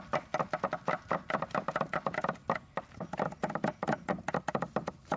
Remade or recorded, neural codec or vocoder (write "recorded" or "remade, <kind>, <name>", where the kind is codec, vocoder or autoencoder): recorded